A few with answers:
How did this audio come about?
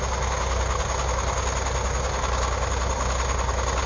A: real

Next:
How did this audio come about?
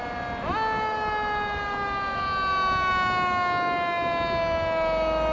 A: real